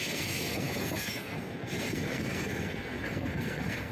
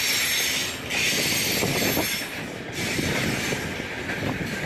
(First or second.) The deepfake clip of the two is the first